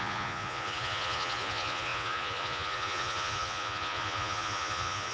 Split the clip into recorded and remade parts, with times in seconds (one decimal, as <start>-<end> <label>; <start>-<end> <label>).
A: 0.0-5.1 remade